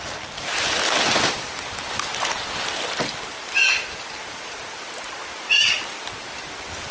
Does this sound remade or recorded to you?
remade